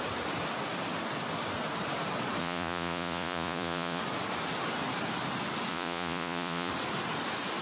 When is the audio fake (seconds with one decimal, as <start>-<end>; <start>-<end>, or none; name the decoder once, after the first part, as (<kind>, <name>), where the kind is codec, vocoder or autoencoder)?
2.4-4.0 (vocoder, Vocos); 5.7-6.7